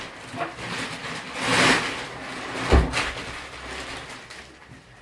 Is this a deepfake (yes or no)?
no